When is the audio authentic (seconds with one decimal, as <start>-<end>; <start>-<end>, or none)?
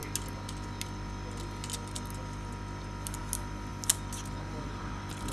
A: 0.0-5.3